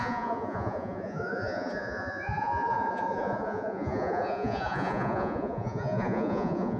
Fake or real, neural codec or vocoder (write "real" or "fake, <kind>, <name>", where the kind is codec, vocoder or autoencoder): fake, vocoder, Vocos